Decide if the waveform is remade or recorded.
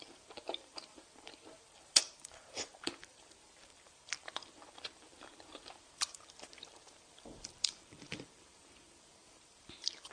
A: remade